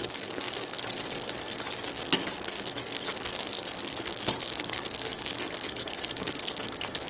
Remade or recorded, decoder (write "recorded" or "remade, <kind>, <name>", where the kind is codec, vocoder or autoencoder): remade, codec, DAC